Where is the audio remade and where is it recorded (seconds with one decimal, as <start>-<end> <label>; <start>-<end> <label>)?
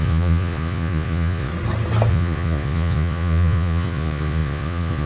0.0-1.5 remade; 1.5-2.1 recorded; 2.1-5.1 remade